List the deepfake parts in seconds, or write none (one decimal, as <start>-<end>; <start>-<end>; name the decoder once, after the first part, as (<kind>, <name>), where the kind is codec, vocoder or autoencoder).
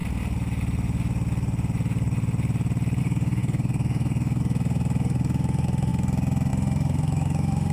3.0-7.7 (autoencoder, DAC-VAE)